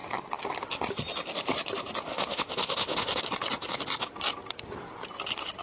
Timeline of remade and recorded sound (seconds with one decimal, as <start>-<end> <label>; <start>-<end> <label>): 0.0-2.1 recorded; 2.1-3.2 remade; 3.2-5.6 recorded